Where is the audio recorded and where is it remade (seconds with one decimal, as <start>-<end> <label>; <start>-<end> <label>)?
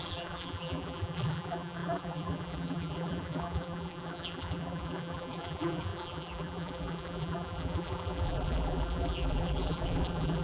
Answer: 0.0-10.4 remade